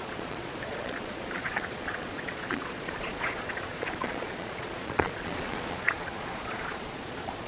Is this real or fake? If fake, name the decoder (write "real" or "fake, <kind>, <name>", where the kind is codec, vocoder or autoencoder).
fake, vocoder, Vocos